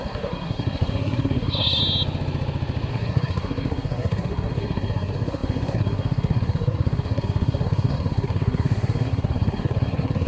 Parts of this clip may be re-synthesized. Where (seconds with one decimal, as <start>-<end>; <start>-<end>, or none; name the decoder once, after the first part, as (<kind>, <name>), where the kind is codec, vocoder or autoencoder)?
0.0-1.8 (codec, SNAC); 2.9-10.3

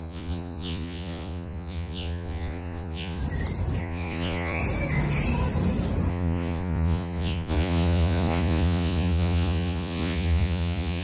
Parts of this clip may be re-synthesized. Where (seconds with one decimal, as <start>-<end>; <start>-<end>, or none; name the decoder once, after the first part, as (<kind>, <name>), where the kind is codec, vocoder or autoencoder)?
0.0-3.2 (vocoder, Vocos); 3.8-4.6; 6.1-11.0

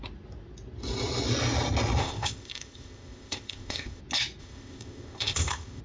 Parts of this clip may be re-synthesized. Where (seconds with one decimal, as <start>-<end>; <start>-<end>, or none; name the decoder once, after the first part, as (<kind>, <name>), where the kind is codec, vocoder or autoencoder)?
2.0-4.0 (codec, ZipCodec); 4.4-5.8

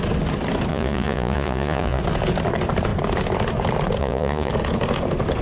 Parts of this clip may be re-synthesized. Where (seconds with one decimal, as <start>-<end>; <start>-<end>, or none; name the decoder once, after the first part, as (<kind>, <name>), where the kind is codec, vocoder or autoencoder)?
0.7-2.0 (vocoder, Vocos); 4.0-4.5

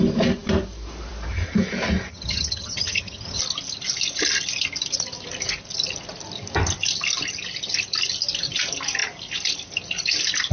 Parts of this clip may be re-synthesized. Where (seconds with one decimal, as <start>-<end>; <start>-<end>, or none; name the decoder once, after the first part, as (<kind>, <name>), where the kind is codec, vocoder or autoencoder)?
2.1-3.4 (vocoder, HiFi-GAN)

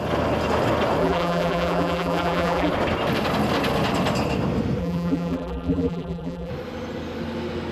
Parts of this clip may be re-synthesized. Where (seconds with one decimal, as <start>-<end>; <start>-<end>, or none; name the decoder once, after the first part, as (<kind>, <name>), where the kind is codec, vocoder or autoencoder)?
1.0-2.7 (vocoder, BigVGAN v2); 4.8-6.5

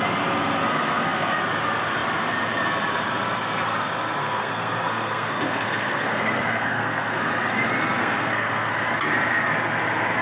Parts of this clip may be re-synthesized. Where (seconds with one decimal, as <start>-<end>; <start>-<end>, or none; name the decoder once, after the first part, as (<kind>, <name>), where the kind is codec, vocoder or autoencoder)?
0.7-1.4 (codec, SNAC); 4.2-7.3; 8.0-8.7